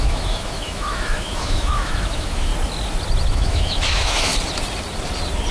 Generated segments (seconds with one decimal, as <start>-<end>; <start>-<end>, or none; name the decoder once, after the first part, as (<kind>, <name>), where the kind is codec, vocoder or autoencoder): 0.0-2.5 (autoencoder, DAC-VAE); 3.3-4.3